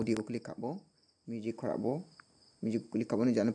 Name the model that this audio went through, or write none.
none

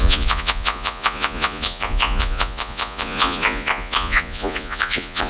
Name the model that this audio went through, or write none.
vocoder, Vocos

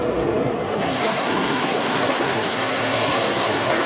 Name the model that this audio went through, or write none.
codec, SNAC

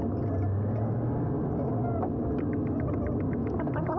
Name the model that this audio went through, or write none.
none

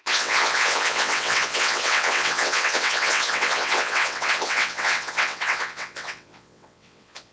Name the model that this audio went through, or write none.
vocoder, WaveNeXt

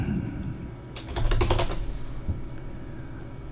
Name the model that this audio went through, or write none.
none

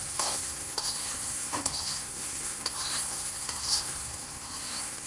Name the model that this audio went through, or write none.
codec, SNAC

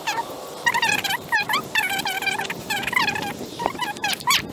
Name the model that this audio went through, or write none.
vocoder, BigVGAN v2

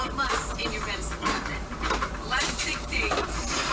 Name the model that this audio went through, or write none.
vocoder, BigVGAN v2